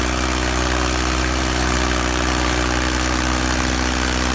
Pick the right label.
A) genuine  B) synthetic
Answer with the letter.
A